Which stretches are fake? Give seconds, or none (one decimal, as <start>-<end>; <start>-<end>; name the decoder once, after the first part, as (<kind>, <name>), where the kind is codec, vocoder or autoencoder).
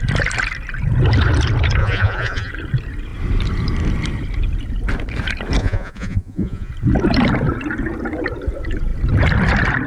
1.8-2.5 (vocoder, Vocos); 5.6-6.7